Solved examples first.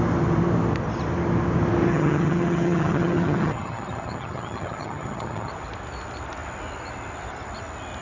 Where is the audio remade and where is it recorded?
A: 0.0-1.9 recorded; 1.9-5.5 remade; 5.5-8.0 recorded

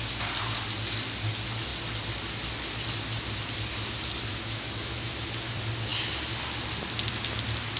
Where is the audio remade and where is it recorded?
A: 0.0-4.3 recorded; 4.3-5.1 remade; 5.1-7.8 recorded